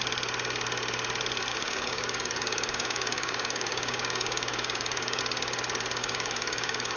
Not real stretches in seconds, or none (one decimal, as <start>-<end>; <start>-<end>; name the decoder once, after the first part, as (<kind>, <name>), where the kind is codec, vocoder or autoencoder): 1.5-5.2 (codec, DAC); 6.0-7.0